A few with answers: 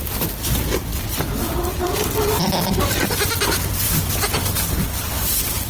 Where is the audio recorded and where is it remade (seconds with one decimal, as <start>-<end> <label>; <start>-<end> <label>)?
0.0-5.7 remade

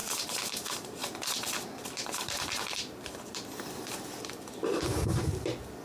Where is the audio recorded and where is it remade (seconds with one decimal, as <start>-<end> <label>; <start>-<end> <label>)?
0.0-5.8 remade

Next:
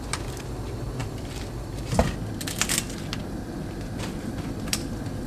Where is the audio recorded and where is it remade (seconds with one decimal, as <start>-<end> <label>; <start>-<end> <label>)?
0.0-2.0 remade; 2.0-3.2 recorded; 3.2-5.3 remade